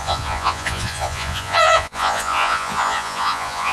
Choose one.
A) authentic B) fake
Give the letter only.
B